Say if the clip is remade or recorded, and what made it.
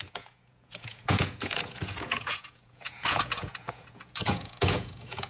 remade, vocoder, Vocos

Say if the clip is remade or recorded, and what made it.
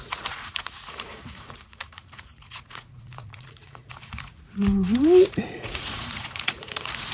remade, vocoder, Vocos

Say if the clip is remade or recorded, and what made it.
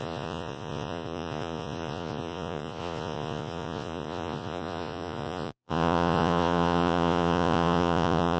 remade, vocoder, Vocos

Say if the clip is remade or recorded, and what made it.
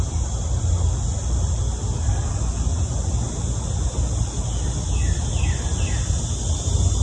recorded